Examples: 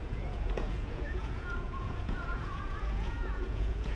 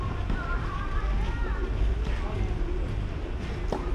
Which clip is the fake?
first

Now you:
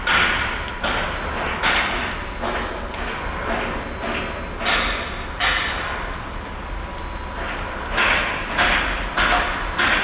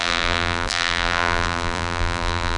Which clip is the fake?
second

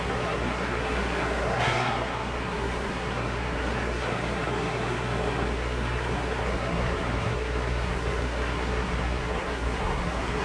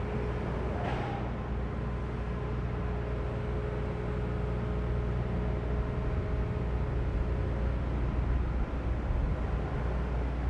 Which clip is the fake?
first